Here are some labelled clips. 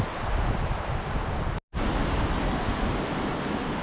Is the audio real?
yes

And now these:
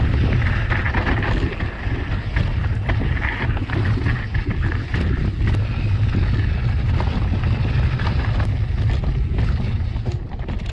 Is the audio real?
yes